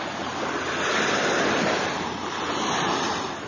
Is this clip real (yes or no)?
yes